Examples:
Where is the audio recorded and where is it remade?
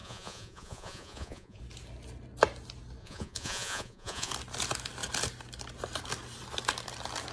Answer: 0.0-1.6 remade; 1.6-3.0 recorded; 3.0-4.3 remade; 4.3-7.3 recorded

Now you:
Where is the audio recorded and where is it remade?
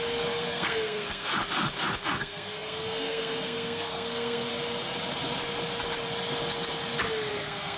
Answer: 0.0-1.3 remade; 1.3-2.2 recorded; 2.2-4.5 remade; 4.5-7.3 recorded; 7.3-7.8 remade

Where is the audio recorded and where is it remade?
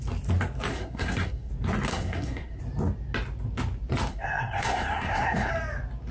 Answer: 0.0-0.7 recorded; 0.7-1.5 remade; 1.5-1.9 recorded; 1.9-2.6 remade; 2.6-4.1 recorded; 4.1-5.5 remade; 5.5-6.1 recorded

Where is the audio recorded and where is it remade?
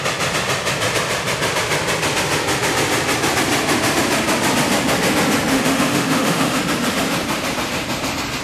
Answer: 0.0-5.5 recorded; 5.5-6.6 remade; 6.6-8.4 recorded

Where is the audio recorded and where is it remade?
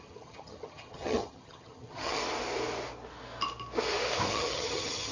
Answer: 0.0-2.2 remade; 2.2-4.3 recorded; 4.3-5.1 remade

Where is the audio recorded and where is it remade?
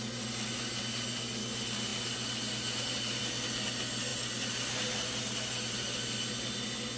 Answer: 0.0-7.0 recorded